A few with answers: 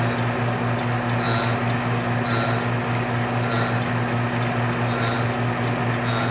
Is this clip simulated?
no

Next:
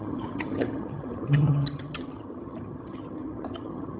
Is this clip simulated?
yes